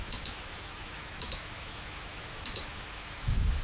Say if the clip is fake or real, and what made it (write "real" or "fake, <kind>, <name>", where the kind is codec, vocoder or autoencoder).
fake, autoencoder, DAC-VAE